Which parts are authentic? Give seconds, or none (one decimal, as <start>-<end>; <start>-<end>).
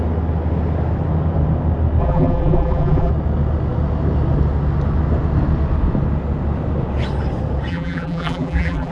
0.0-2.0; 3.1-7.7